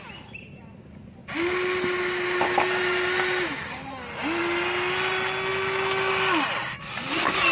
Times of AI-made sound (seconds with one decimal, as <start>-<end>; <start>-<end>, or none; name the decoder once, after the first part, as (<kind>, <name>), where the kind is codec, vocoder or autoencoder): none